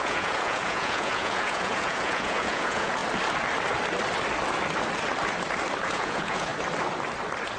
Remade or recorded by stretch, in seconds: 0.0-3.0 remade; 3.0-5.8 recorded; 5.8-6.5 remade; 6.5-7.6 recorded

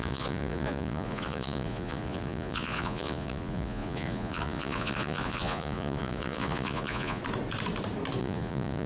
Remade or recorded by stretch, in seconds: 0.0-7.2 remade; 7.2-8.2 recorded; 8.2-8.9 remade

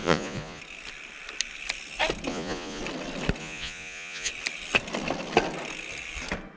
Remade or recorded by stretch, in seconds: 0.0-0.6 remade; 0.6-2.3 recorded; 2.3-2.8 remade; 2.8-3.4 recorded; 3.4-4.3 remade; 4.3-6.6 recorded

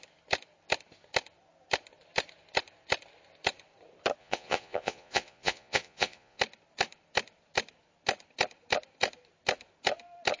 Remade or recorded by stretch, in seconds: 0.0-4.2 recorded; 4.2-6.4 remade; 6.4-10.4 recorded

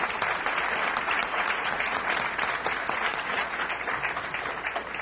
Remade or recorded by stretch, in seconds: 0.0-1.2 recorded; 1.2-2.0 remade; 2.0-3.1 recorded; 3.1-3.7 remade; 3.7-5.0 recorded